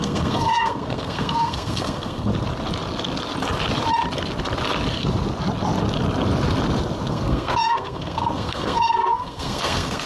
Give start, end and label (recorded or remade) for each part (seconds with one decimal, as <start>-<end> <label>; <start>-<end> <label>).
0.0-2.3 remade; 2.3-7.1 recorded; 7.1-10.1 remade